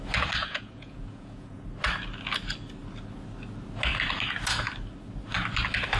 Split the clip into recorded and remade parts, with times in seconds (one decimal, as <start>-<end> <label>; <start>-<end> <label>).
0.0-0.4 recorded; 0.4-1.6 remade; 1.6-6.0 recorded